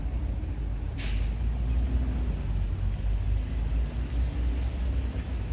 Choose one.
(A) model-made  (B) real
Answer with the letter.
B